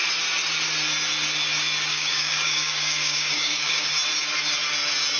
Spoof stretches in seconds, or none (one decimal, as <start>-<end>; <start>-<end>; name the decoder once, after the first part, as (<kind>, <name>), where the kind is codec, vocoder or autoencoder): 1.9-3.9 (codec, DAC)